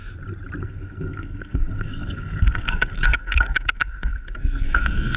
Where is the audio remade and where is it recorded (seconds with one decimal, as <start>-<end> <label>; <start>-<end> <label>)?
0.0-0.6 recorded; 0.6-5.2 remade